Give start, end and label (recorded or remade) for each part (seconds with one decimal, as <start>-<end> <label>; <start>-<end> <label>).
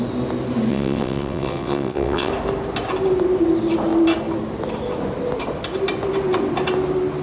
0.0-0.7 recorded; 0.7-2.3 remade; 2.3-7.2 recorded